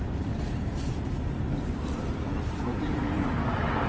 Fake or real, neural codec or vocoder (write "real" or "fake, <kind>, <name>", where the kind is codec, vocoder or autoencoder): fake, vocoder, BigVGAN v2